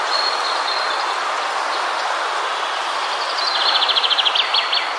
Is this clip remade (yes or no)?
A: no